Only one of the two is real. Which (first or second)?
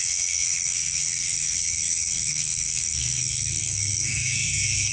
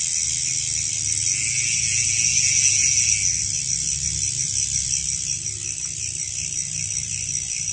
second